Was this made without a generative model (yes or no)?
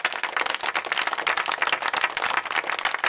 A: yes